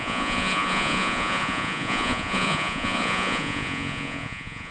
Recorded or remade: remade